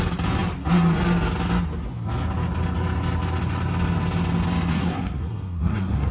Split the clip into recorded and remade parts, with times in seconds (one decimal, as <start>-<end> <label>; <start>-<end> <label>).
0.0-4.7 recorded; 4.7-6.1 remade